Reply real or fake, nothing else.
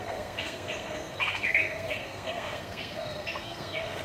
fake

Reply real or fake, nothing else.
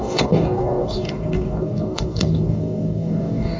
fake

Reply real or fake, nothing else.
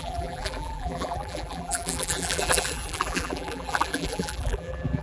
fake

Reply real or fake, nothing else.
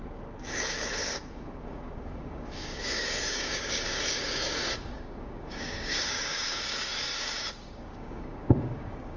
fake